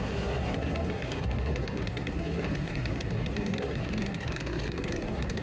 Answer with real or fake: fake